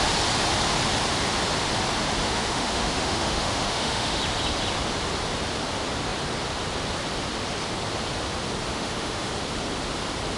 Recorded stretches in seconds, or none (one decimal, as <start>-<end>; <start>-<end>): 0.0-2.2; 4.2-8.7; 9.3-10.4